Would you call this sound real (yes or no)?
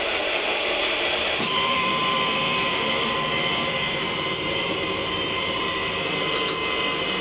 no